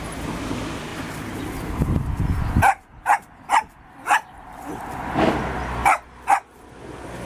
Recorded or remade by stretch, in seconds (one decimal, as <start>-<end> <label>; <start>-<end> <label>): 0.0-0.9 recorded; 0.9-5.3 remade; 5.3-7.3 recorded